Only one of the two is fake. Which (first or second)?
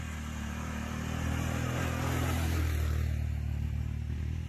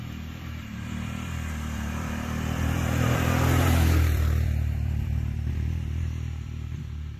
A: second